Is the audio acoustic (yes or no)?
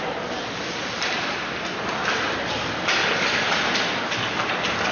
yes